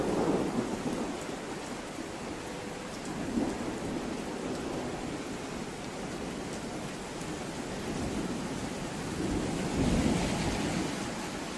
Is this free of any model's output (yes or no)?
yes